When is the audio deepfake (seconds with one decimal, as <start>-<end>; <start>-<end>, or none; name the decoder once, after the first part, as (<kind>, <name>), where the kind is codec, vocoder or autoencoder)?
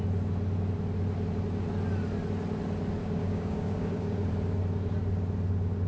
3.0-4.3 (codec, DAC)